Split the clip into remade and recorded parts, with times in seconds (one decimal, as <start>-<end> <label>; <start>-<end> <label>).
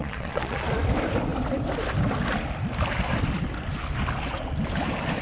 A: 0.0-0.7 remade; 0.7-5.2 recorded